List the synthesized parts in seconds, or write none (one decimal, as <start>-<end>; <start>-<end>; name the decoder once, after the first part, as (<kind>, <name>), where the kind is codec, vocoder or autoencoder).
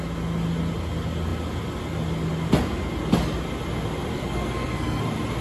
4.1-5.0 (codec, SNAC)